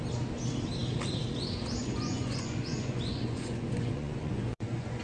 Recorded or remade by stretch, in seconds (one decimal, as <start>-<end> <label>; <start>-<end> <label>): 0.0-1.8 recorded; 1.8-5.0 remade